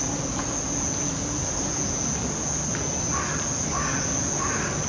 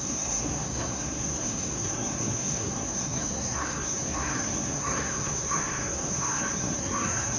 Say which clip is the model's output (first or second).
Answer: second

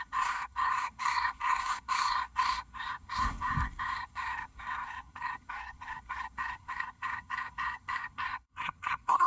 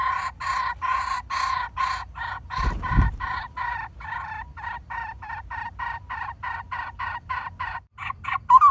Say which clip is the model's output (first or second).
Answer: first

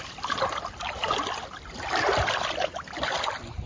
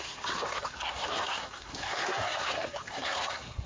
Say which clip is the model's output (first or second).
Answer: second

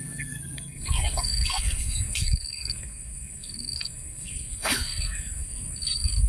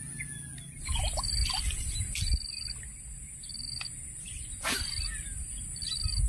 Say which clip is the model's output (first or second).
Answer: first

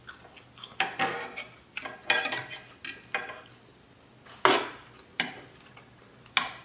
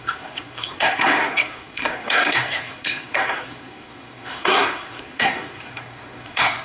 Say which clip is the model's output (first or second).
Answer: second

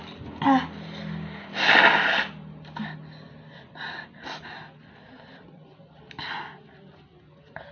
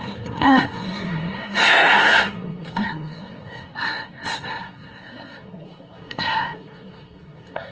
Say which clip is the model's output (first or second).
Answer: second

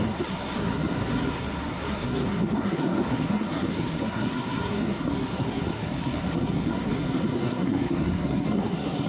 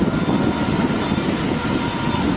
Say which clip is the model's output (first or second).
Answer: first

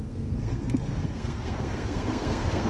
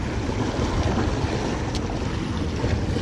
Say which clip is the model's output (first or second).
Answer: first